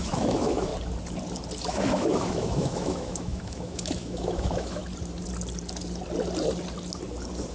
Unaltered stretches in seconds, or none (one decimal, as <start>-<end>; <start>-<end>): 0.7-1.7; 4.8-7.5